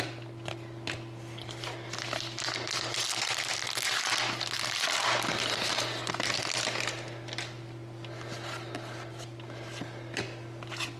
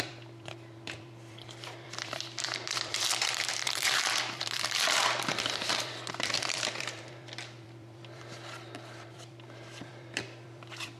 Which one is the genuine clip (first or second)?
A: first